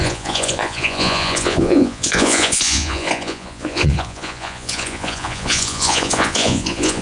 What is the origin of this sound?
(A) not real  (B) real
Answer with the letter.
A